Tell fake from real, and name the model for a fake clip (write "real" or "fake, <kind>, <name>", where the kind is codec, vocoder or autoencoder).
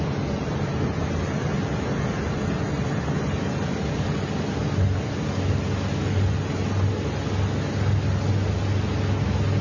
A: real